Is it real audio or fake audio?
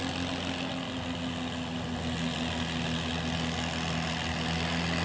real